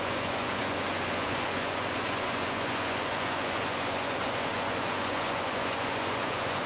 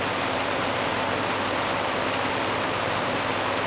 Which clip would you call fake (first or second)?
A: first